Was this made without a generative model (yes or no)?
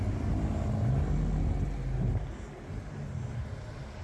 yes